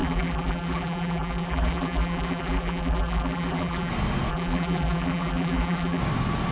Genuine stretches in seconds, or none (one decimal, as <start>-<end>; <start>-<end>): 3.9-4.3; 6.0-6.5

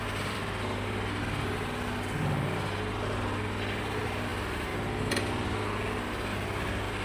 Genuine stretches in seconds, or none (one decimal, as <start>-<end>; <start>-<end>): 0.0-7.0

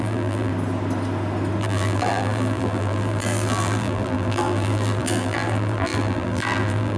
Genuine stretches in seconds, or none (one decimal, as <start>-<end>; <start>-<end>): 0.5-1.6

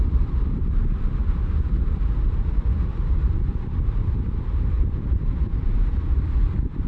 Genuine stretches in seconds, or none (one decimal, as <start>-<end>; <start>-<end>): 0.0-1.2; 1.7-6.9

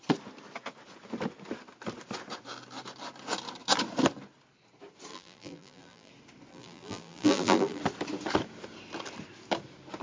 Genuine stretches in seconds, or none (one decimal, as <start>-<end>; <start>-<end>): 0.0-5.1; 6.1-6.5; 7.8-10.0

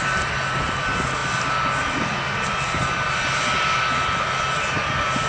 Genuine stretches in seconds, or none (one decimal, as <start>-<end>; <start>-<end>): 0.0-5.3

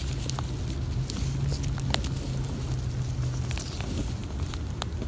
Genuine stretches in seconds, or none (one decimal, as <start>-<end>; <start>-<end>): 0.0-5.1

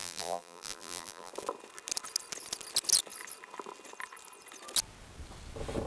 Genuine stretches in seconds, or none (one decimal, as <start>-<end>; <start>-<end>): 1.3-5.9